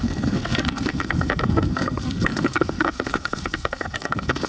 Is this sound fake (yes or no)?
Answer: yes